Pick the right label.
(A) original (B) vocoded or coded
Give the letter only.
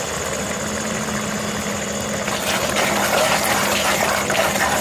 A